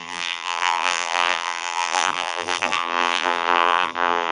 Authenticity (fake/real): fake